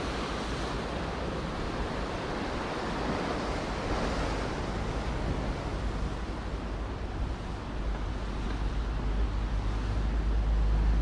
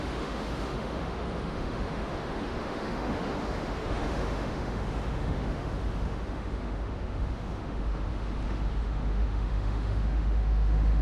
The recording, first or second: first